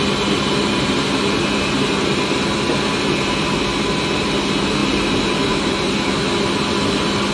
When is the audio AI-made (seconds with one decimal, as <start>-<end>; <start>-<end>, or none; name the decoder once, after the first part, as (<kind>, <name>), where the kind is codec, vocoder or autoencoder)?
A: 0.6-2.1 (vocoder, BigVGAN v2); 4.8-6.1